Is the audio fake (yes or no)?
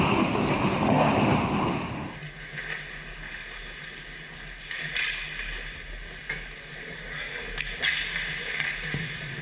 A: no